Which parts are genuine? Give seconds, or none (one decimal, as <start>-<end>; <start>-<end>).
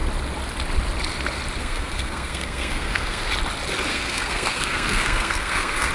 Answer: 0.0-1.6; 3.3-3.9